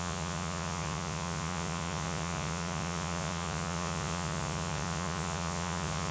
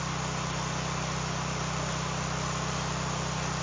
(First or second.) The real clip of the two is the second